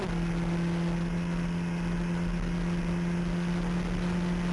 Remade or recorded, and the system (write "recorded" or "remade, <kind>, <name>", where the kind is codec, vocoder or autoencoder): recorded